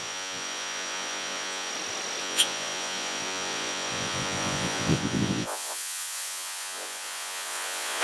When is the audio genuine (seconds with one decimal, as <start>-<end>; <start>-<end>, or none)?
1.7-2.2